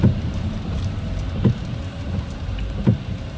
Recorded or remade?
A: remade